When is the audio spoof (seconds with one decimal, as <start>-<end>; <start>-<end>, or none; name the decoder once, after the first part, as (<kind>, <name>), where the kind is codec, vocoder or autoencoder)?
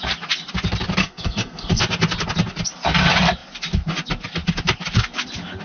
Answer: 1.0-1.8 (codec, SNAC)